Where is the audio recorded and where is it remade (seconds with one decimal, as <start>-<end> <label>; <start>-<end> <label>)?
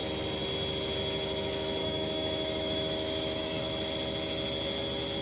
0.0-1.8 recorded; 1.8-3.6 remade; 3.6-5.2 recorded